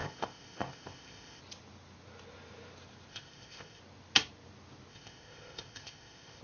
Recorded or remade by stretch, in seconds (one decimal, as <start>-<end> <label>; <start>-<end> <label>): 0.0-1.4 remade; 1.4-3.1 recorded; 3.1-3.8 remade; 3.8-4.9 recorded; 4.9-6.4 remade